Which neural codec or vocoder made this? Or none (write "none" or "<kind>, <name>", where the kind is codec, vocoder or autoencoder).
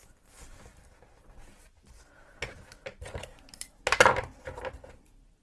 none